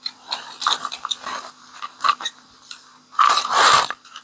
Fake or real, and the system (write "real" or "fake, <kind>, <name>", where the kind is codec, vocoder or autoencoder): real